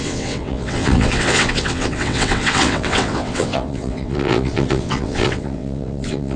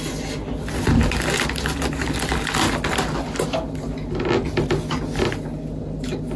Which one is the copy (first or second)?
first